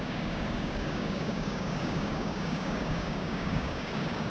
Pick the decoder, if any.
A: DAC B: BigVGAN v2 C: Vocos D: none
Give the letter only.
A